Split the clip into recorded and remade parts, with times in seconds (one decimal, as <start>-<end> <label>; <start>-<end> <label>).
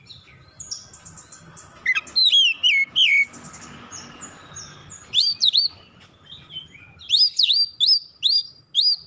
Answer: 0.0-4.8 recorded; 4.8-5.7 remade; 5.7-9.1 recorded